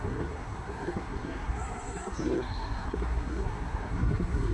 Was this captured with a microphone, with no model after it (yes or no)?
no